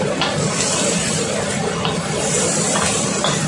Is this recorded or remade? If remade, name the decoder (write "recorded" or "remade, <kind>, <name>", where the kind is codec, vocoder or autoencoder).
remade, vocoder, BigVGAN v2